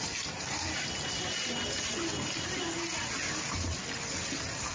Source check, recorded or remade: recorded